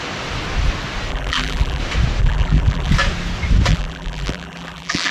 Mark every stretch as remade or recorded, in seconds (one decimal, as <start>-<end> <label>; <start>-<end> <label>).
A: 0.0-1.1 recorded; 1.1-1.8 remade; 1.8-2.2 recorded; 2.2-2.9 remade; 2.9-3.7 recorded; 3.7-5.1 remade